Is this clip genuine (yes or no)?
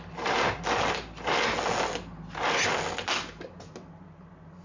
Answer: yes